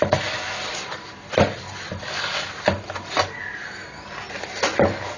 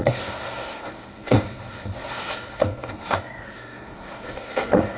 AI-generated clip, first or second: second